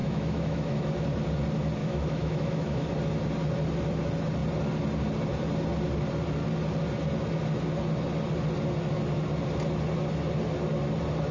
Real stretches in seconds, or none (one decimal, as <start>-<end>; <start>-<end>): 0.9-1.8; 2.9-11.3